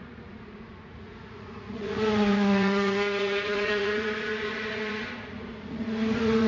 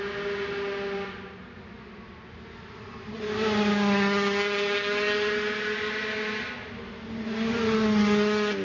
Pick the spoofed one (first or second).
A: first